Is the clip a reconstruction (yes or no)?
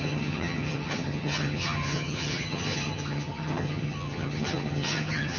yes